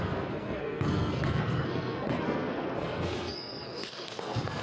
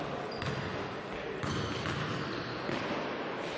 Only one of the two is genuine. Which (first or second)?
second